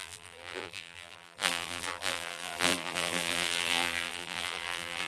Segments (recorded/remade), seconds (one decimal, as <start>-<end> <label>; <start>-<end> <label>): 0.0-5.1 remade

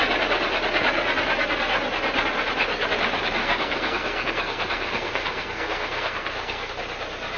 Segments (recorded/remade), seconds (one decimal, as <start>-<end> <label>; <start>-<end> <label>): 0.0-3.4 recorded; 3.4-6.7 remade; 6.7-7.4 recorded